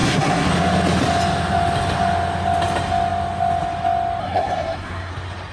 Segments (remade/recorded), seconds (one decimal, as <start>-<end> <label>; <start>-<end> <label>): 0.0-0.5 remade; 0.5-4.2 recorded; 4.2-5.1 remade; 5.1-5.5 recorded